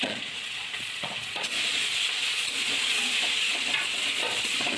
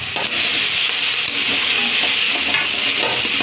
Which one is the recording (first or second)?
second